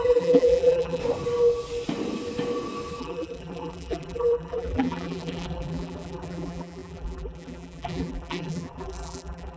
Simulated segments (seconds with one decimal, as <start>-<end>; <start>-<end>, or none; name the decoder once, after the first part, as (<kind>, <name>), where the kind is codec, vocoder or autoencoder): 0.0-1.0 (vocoder, BigVGAN v2); 3.0-9.6